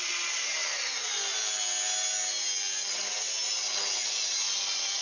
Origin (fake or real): real